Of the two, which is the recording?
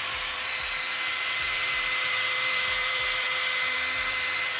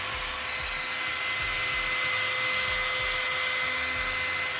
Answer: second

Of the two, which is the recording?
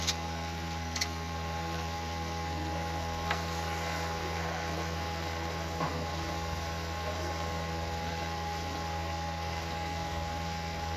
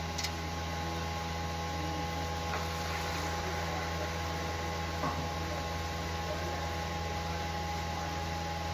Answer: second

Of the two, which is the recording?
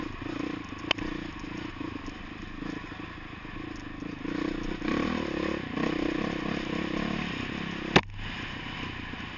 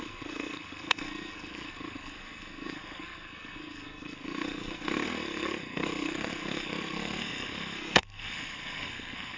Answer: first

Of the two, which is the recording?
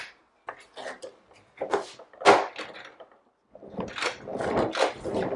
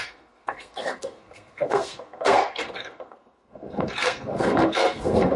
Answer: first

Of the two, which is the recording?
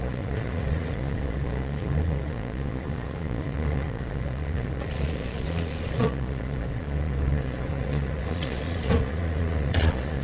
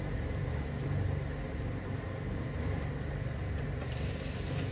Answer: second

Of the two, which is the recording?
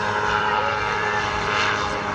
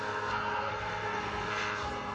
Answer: first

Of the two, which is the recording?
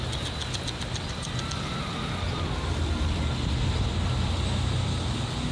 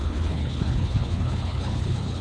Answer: first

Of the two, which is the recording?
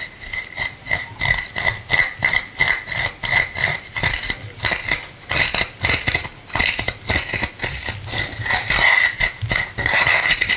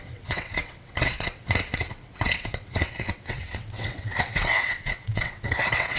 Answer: first